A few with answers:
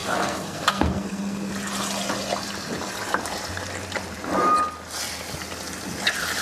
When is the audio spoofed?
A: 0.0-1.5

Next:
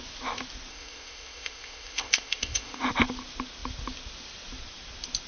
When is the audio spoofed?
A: 0.7-2.8